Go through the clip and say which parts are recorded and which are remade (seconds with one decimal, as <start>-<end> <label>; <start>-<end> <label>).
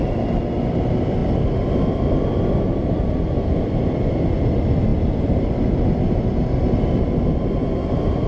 0.0-8.3 recorded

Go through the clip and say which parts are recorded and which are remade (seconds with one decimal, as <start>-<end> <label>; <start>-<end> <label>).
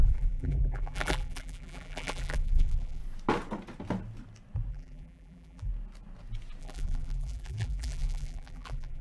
0.0-3.0 remade; 3.0-4.7 recorded; 4.7-5.7 remade; 5.7-6.6 recorded; 6.6-9.0 remade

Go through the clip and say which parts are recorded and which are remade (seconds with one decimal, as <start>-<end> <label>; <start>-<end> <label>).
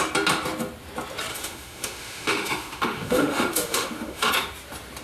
0.0-1.3 recorded; 1.3-4.3 remade; 4.3-5.0 recorded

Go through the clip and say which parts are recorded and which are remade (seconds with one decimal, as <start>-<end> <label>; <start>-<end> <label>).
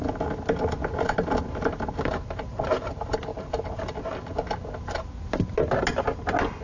0.0-3.3 recorded; 3.3-4.0 remade; 4.0-6.6 recorded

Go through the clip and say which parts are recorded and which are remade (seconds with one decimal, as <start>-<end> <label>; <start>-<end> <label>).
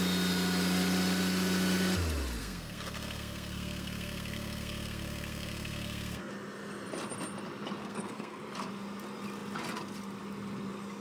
0.0-2.4 recorded; 2.4-6.3 remade; 6.3-7.8 recorded; 7.8-8.4 remade; 8.4-11.0 recorded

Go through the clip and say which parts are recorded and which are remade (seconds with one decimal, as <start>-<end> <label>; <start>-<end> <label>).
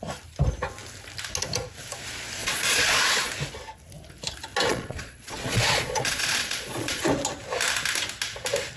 0.0-2.4 recorded; 2.4-3.3 remade; 3.3-4.7 recorded; 4.7-7.0 remade; 7.0-8.8 recorded